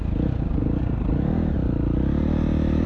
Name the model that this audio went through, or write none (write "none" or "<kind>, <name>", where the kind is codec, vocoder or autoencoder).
none